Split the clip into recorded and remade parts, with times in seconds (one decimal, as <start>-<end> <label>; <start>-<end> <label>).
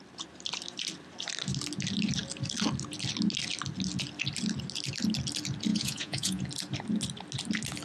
0.0-5.7 recorded; 5.7-6.4 remade; 6.4-7.8 recorded